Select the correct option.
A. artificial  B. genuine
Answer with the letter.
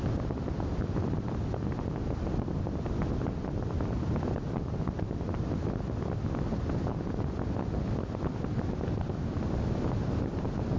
B